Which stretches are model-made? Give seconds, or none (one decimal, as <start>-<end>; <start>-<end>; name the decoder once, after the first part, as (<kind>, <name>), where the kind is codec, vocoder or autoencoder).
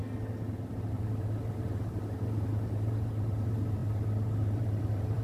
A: 0.7-5.2 (vocoder, BigVGAN v2)